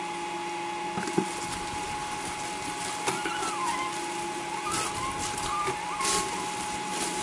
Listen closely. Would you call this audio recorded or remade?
recorded